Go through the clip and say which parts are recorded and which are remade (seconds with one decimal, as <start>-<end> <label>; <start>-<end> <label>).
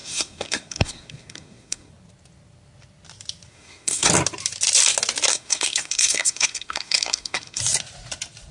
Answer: 0.0-1.9 remade; 1.9-3.5 recorded; 3.5-4.1 remade; 4.1-5.3 recorded; 5.3-7.6 remade; 7.6-8.5 recorded